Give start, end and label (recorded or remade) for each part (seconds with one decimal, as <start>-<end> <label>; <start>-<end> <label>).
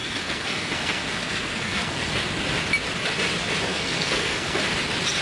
0.0-2.1 remade; 2.1-3.7 recorded; 3.7-4.6 remade; 4.6-5.2 recorded